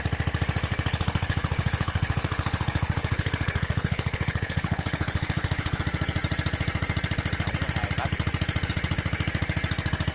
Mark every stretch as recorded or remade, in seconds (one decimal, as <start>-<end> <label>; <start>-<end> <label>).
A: 0.0-0.7 recorded; 0.7-5.8 remade; 5.8-10.1 recorded